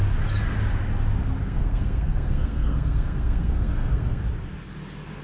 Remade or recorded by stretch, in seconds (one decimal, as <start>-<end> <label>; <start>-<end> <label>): 0.0-1.4 recorded; 1.4-4.2 remade; 4.2-5.2 recorded